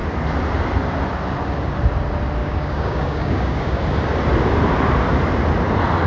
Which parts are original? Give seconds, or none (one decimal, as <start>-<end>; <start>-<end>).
0.0-2.4; 3.8-6.1